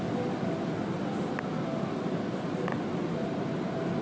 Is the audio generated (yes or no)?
no